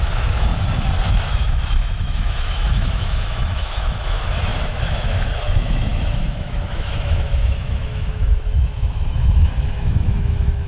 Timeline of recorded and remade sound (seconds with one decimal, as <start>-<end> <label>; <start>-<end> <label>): 0.0-0.5 remade; 0.5-1.1 recorded; 1.1-10.7 remade